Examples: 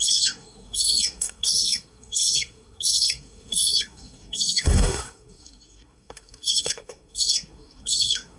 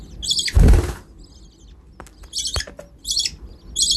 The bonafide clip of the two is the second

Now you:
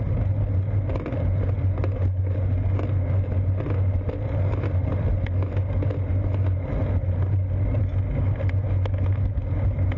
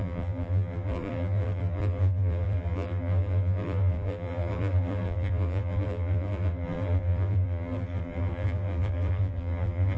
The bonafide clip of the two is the first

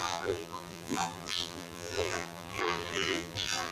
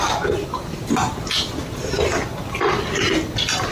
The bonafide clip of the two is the second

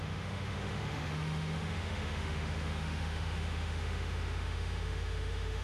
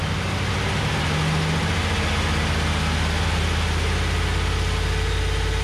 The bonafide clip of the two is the second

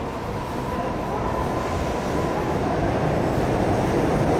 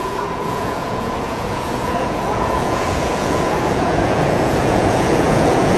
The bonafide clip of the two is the first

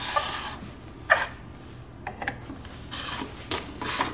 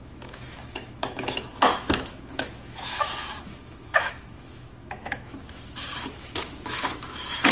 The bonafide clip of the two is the first